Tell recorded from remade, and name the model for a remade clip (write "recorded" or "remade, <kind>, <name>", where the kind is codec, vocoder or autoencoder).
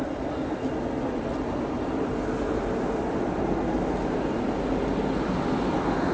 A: recorded